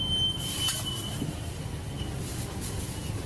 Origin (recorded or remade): recorded